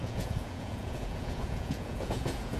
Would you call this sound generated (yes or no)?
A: yes